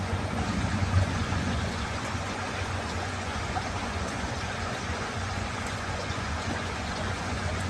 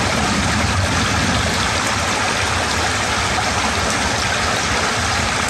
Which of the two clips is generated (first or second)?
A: first